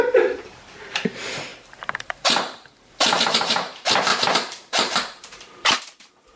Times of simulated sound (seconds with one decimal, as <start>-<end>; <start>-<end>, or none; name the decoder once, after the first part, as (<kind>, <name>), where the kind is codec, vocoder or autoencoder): 0.0-6.4 (vocoder, BigVGAN v2)